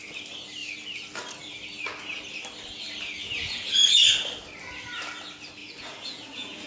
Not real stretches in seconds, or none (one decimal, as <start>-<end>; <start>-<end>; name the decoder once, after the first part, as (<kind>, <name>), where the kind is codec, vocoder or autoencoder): 3.2-3.9 (vocoder, Vocos); 5.6-6.7